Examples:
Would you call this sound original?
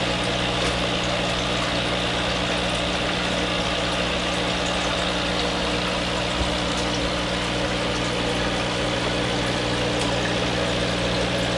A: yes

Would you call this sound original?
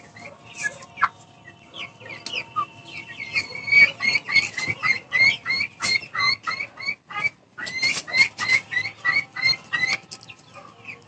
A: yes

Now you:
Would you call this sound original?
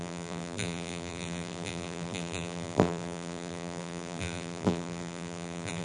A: no